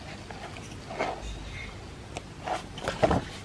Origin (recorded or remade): recorded